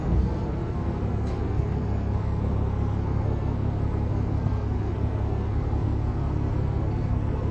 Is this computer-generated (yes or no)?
yes